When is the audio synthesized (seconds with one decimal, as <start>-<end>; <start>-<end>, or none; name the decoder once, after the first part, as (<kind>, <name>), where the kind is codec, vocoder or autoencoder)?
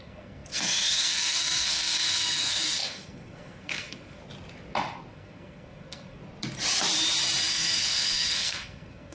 0.0-4.2 (codec, SNAC); 5.1-6.2; 7.5-9.1